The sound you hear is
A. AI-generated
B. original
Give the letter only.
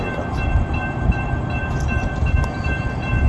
A